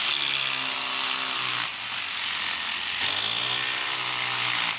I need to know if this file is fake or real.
real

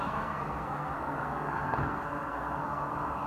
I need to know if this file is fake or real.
fake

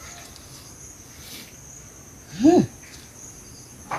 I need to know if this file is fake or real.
real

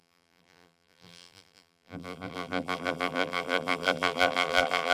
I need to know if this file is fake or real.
fake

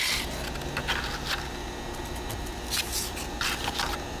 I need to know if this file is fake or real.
real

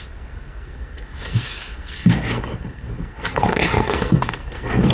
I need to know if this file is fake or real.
fake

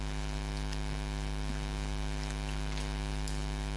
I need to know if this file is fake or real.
real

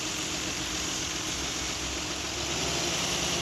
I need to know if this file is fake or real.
real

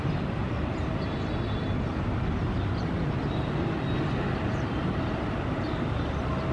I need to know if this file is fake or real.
real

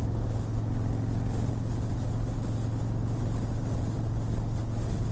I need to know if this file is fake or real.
real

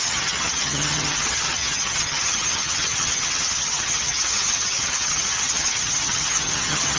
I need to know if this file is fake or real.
fake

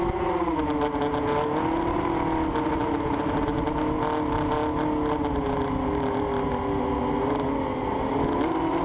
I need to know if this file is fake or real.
real